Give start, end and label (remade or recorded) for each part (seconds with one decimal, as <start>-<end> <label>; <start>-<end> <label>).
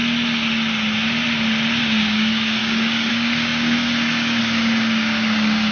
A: 0.0-1.8 recorded; 1.8-5.7 remade